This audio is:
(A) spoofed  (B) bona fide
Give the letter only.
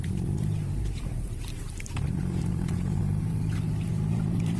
A